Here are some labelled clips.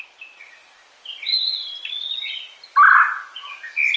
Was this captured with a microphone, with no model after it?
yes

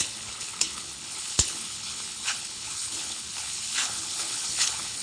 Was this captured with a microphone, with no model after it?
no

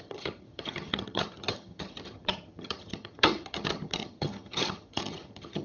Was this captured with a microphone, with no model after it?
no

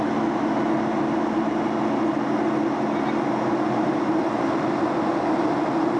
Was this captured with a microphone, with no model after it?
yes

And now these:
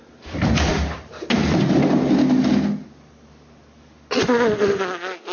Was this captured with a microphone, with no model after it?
yes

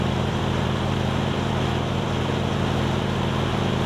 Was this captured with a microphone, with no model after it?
no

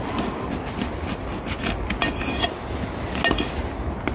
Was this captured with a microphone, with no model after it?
yes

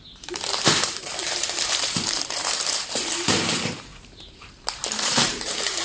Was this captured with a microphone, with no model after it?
no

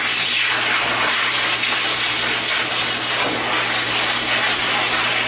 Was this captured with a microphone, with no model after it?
yes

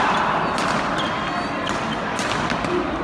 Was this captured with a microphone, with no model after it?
yes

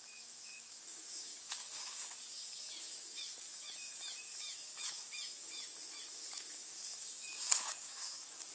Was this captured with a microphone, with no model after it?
no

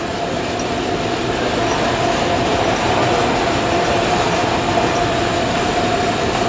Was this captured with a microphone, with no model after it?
yes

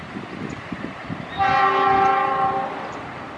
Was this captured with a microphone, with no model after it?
yes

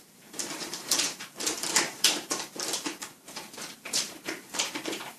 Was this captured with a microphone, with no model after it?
no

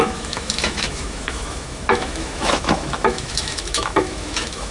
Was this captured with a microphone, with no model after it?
no